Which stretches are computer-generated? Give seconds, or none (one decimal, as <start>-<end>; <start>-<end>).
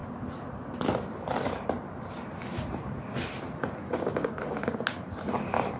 3.8-4.4